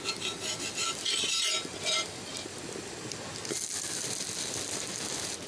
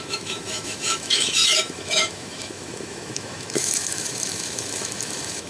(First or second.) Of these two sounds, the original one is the first